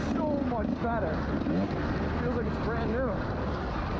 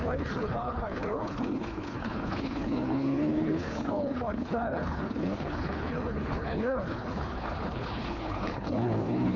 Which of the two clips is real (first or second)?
first